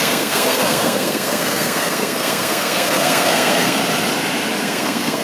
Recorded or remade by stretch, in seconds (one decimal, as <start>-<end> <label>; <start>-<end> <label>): 0.0-3.8 remade; 3.8-4.6 recorded; 4.6-5.2 remade